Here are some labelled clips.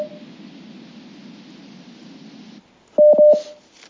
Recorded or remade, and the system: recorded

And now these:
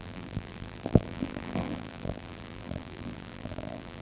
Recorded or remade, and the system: remade, vocoder, BigVGAN v2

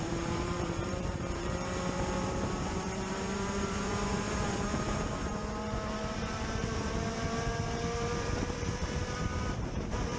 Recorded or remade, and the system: remade, vocoder, BigVGAN v2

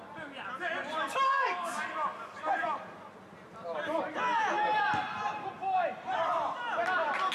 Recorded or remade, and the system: recorded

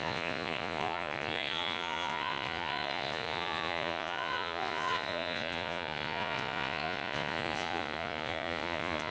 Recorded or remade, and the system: remade, vocoder, Vocos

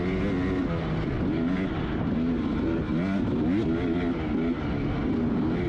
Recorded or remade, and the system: recorded